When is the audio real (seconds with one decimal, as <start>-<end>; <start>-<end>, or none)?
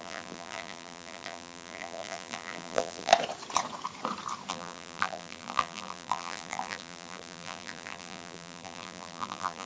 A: 3.1-4.5